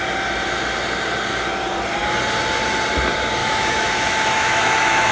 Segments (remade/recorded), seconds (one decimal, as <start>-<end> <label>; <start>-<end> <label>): 0.0-3.4 recorded; 3.4-5.1 remade